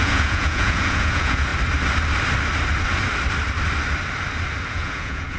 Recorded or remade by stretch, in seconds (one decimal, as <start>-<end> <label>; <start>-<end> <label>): 0.0-1.5 remade; 1.5-4.7 recorded; 4.7-5.4 remade